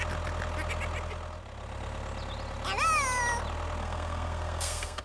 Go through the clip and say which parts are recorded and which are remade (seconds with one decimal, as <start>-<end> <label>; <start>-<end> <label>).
0.0-3.8 recorded; 3.8-5.0 remade